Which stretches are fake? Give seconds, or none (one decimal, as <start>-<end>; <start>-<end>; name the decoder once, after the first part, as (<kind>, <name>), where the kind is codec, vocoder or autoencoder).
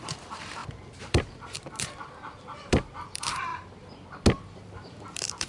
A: 0.0-3.5 (vocoder, BigVGAN v2); 4.4-5.5